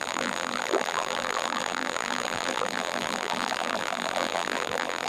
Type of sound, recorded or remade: remade